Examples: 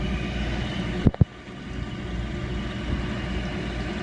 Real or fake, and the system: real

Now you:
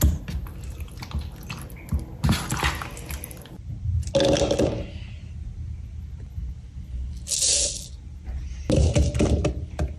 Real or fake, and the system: real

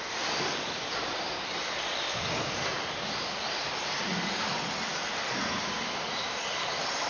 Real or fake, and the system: fake, vocoder, BigVGAN v2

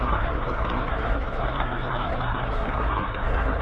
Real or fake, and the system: fake, codec, SNAC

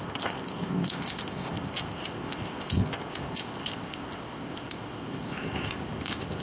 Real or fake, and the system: fake, codec, ZipCodec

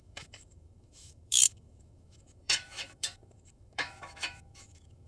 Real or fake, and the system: fake, autoencoder, DAC-VAE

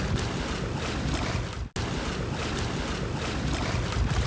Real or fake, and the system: real